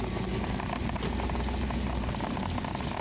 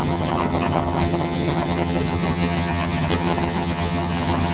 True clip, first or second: first